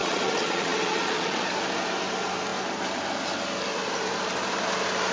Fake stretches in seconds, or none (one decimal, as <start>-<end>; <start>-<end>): 0.0-1.5